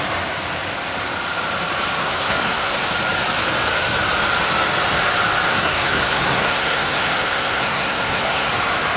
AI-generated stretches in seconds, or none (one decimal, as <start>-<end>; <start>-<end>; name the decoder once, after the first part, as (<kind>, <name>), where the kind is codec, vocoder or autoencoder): 2.0-2.7 (codec, SNAC); 5.5-8.5